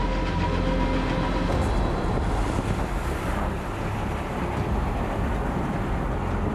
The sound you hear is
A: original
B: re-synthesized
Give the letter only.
A